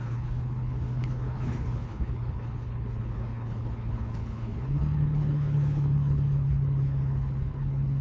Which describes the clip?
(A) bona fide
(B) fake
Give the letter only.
B